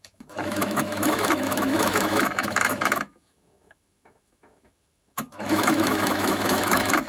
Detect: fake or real fake